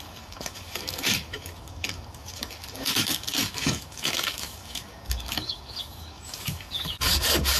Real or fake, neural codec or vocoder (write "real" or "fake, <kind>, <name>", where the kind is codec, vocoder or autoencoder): fake, codec, DAC